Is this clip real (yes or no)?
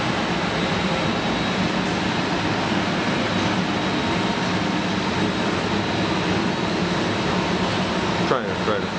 yes